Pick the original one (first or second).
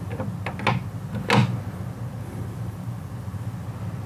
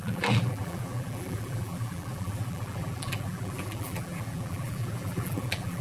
first